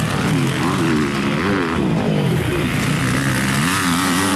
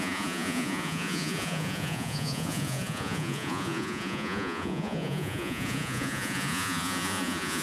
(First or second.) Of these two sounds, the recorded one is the first